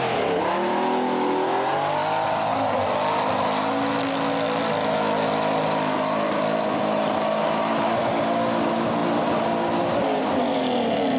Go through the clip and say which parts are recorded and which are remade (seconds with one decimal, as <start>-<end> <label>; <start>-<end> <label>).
0.0-11.2 recorded